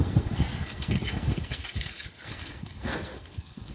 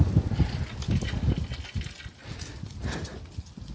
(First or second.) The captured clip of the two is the second